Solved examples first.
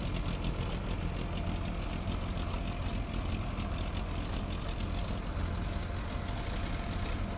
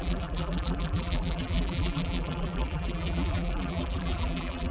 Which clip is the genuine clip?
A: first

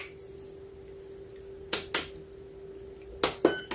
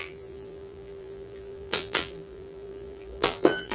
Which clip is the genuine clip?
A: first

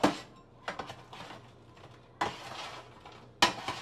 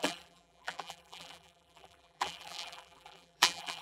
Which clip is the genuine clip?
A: first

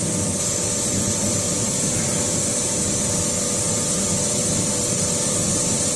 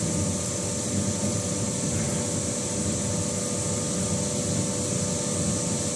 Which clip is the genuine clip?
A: second